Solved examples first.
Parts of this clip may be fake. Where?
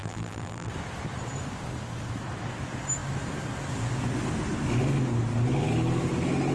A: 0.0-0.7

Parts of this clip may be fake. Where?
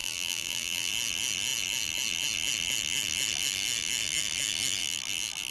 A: 0.0-0.9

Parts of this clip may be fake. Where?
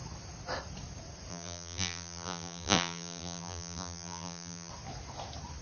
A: 1.3-4.7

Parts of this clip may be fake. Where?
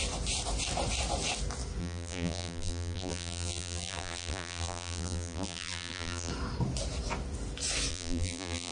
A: 1.8-6.3; 7.9-8.7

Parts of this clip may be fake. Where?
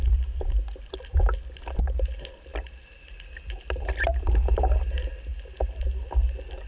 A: none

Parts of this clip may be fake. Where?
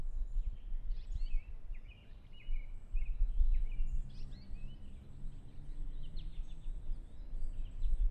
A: 0.0-2.4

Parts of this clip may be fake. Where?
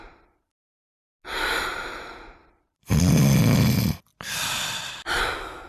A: 2.4-3.0; 4.1-4.9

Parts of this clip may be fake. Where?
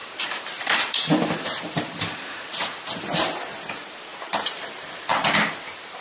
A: 0.0-3.4; 4.1-4.6; 5.1-6.0